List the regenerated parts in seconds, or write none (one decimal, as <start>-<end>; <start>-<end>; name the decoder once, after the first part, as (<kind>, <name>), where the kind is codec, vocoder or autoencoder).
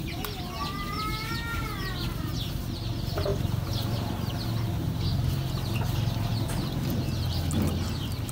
none